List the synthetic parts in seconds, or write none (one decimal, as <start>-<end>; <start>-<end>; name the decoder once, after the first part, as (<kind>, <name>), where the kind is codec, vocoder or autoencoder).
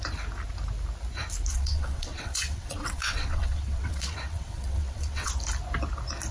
1.5-5.3 (vocoder, WaveNeXt)